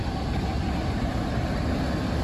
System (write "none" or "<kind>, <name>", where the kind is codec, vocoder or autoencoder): none